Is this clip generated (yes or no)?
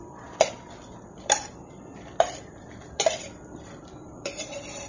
yes